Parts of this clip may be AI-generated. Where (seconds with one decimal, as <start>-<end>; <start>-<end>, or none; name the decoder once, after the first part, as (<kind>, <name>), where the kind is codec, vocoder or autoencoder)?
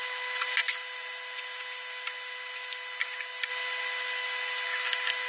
none